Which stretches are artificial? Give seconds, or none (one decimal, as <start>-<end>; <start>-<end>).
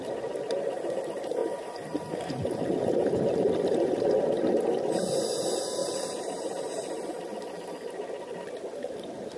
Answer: 1.4-4.0; 5.8-7.1